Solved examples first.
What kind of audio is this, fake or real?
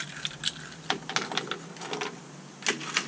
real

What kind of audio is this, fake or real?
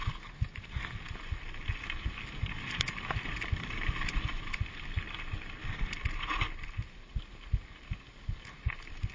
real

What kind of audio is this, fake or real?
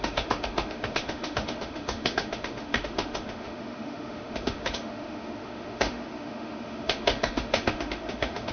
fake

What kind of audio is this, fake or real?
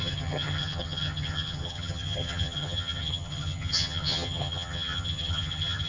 fake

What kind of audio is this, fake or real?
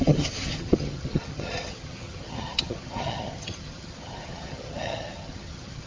fake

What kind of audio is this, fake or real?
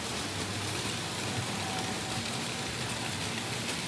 real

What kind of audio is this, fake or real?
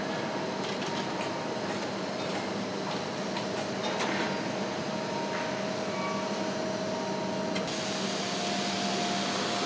real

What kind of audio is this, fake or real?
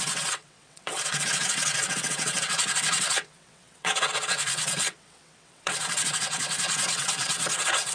fake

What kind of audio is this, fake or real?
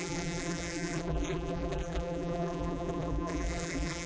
fake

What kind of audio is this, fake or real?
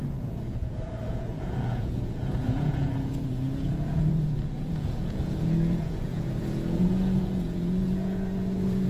fake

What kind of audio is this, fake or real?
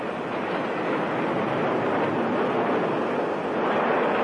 real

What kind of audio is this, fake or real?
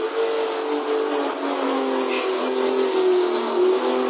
real